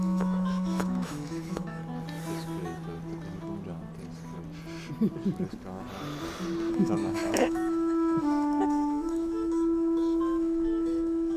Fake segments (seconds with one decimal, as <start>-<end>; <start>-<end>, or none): 0.0-1.8; 6.7-11.4